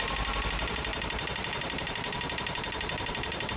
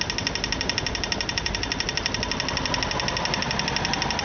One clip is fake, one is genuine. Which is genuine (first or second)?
second